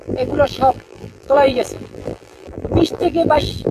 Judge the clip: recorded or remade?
remade